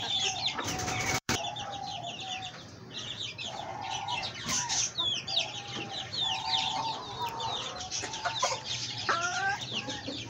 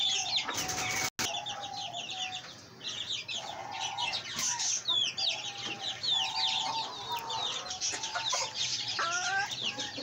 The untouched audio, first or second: second